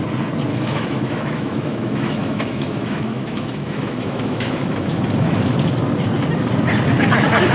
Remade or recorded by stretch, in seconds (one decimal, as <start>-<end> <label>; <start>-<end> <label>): 0.0-0.5 recorded; 0.5-5.0 remade; 5.0-7.5 recorded